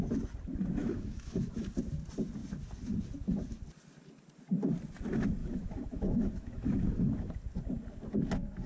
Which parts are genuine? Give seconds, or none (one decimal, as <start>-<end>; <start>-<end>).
0.0-0.8; 1.6-5.4; 7.3-8.7